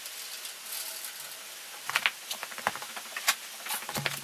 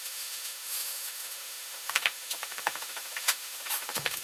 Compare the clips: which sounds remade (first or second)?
second